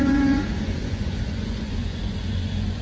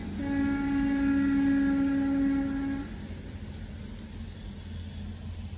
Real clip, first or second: second